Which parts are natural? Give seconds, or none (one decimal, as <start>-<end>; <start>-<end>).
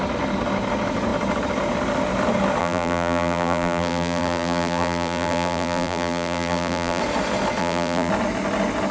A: 0.0-2.6; 7.0-7.6; 8.1-8.9